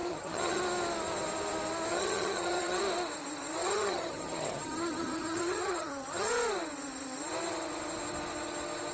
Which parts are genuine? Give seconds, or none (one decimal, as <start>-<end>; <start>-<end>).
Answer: 0.6-1.9; 2.8-3.6; 6.3-8.9